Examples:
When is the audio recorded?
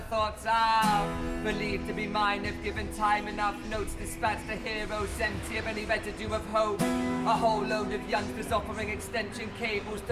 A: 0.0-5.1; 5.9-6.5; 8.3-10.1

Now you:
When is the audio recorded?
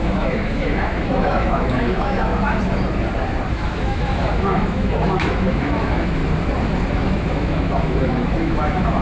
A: 2.3-3.5; 6.2-6.9